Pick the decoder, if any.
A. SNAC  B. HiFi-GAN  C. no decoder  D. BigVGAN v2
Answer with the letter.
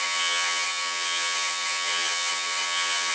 B